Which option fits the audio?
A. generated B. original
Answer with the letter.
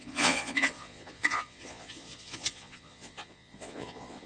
A